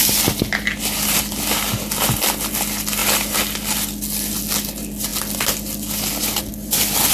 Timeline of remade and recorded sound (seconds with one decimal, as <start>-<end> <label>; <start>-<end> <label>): 0.0-7.1 recorded